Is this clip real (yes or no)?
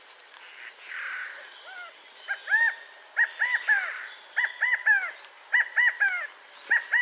yes